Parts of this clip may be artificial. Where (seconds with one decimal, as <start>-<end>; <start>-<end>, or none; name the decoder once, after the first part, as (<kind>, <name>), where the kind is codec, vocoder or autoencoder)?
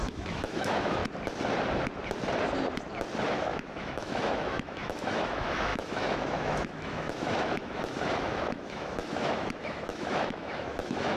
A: 0.0-1.0 (autoencoder, DAC-VAE); 3.3-11.2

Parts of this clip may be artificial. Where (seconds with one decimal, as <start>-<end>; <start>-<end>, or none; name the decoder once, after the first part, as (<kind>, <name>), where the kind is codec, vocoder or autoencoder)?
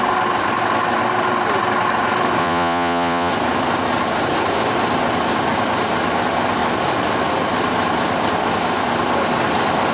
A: 2.4-3.3 (vocoder, Vocos)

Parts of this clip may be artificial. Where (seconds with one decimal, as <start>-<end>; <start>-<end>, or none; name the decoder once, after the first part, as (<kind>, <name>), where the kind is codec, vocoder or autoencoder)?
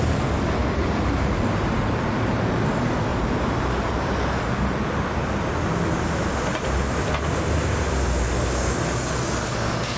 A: 0.6-2.7 (vocoder, BigVGAN v2); 3.1-5.5; 6.5-7.1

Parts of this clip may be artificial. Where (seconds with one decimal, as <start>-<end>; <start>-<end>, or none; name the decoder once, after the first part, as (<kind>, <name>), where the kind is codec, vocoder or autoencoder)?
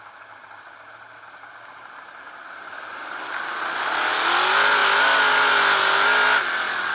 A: none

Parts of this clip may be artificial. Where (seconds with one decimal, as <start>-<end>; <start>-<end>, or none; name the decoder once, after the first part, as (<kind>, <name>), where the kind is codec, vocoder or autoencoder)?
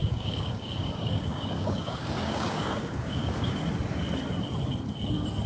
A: 0.0-3.6 (codec, DAC)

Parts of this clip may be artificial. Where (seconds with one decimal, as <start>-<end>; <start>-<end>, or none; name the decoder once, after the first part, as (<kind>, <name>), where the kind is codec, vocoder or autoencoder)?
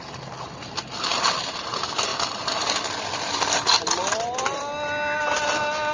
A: 2.1-4.6 (vocoder, BigVGAN v2)